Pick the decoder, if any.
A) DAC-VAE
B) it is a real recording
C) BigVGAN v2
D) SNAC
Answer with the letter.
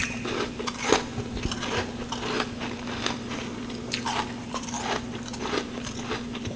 B